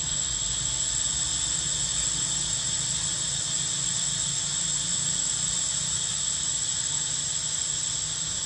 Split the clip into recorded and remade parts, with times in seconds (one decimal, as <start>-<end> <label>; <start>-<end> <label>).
0.0-8.5 recorded